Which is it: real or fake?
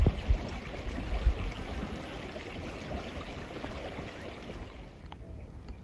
real